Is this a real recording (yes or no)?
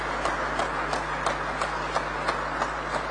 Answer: yes